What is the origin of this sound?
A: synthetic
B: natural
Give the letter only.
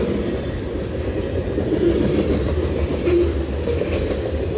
B